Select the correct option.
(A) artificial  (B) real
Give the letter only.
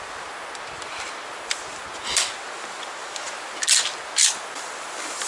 B